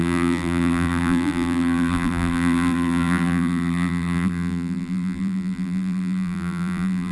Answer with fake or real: fake